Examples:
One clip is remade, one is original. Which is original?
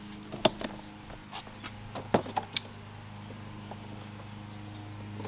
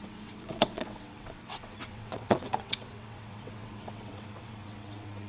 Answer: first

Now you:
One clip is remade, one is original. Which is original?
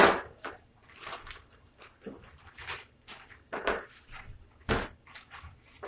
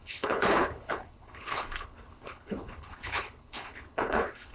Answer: first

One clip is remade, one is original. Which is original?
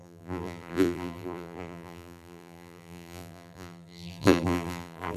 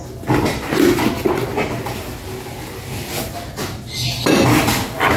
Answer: second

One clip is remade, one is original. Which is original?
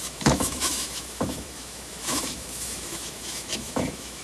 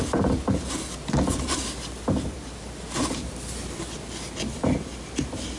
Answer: second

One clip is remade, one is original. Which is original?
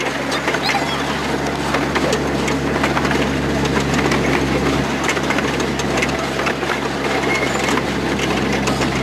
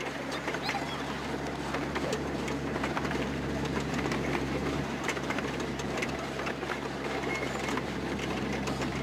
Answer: first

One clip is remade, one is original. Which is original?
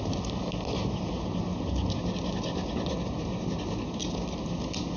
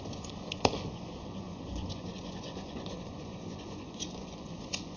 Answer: first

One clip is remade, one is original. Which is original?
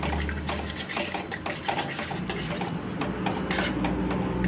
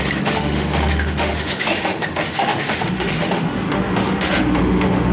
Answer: first